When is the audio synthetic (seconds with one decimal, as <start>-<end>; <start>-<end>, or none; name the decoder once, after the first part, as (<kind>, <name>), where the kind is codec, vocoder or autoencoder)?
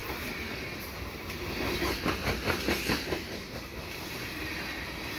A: 3.7-4.5 (vocoder, BigVGAN v2)